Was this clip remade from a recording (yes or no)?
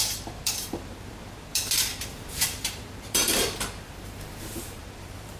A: yes